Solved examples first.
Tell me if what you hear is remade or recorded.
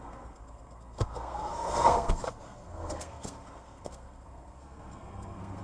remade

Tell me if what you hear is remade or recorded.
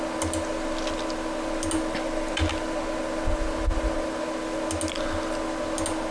recorded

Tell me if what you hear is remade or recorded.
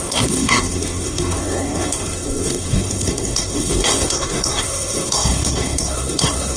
remade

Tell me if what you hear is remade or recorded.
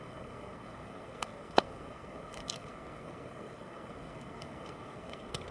remade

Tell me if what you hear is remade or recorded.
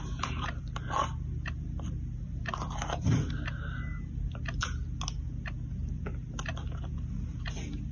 recorded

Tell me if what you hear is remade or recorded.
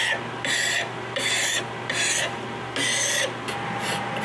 recorded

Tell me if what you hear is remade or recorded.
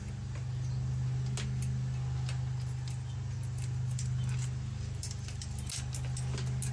recorded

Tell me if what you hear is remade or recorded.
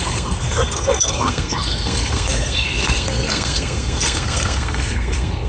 remade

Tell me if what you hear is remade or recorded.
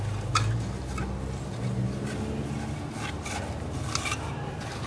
recorded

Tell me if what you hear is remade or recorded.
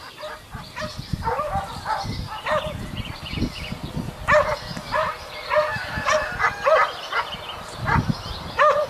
recorded